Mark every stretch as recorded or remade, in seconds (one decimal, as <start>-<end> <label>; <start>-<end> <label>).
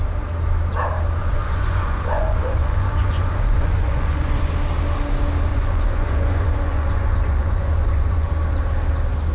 0.0-1.2 recorded; 1.2-4.5 remade; 4.5-5.5 recorded; 5.5-8.3 remade; 8.3-9.3 recorded